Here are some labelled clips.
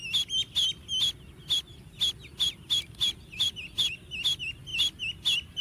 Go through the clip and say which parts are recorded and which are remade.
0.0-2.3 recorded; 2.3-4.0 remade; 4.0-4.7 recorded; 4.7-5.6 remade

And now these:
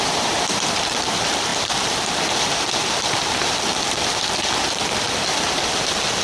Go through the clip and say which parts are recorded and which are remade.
0.0-6.2 remade

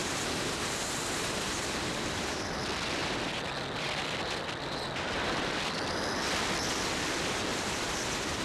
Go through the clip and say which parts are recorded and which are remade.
0.0-2.4 remade; 2.4-7.5 recorded; 7.5-8.4 remade

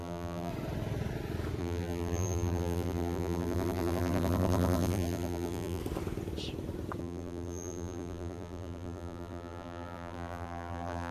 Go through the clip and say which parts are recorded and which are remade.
0.0-0.5 remade; 0.5-1.6 recorded; 1.6-5.8 remade; 5.8-7.0 recorded; 7.0-11.1 remade

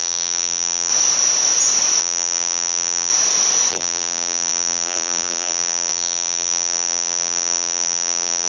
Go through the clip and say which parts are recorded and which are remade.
0.0-0.9 remade; 0.9-2.0 recorded; 2.0-3.1 remade; 3.1-3.7 recorded; 3.7-8.5 remade

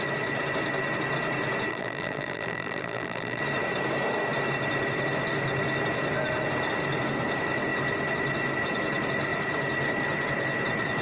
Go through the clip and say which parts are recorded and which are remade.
0.0-1.7 recorded; 1.7-3.4 remade; 3.4-11.0 recorded